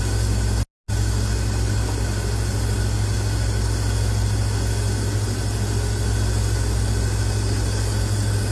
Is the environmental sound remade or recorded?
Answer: recorded